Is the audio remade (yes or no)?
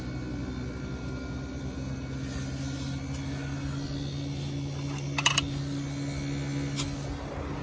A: no